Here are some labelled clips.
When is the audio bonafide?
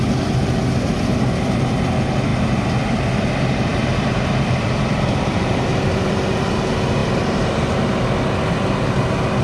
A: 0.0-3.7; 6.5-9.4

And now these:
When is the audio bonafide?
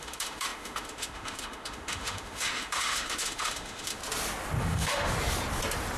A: 4.0-4.6; 5.1-6.0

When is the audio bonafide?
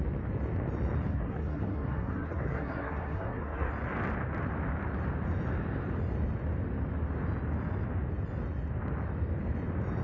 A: 0.0-1.1; 3.7-10.0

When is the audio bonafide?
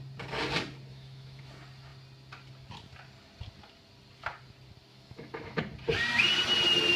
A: 0.0-0.9; 1.4-4.9; 5.6-7.0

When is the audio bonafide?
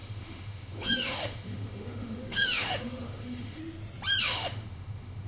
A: 3.6-4.2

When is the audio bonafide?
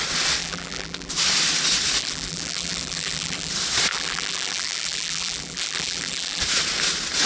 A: 0.0-0.4; 1.1-2.0; 3.5-3.9; 6.4-7.3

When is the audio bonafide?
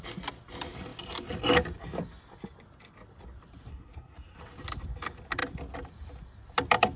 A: 0.0-3.7; 4.4-7.0